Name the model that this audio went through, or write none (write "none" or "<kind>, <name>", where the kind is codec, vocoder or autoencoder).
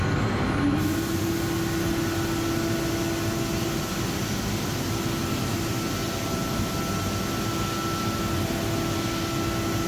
none